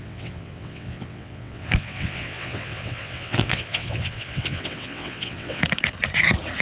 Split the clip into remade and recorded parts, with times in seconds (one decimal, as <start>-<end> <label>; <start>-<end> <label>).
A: 0.0-5.6 remade; 5.6-6.6 recorded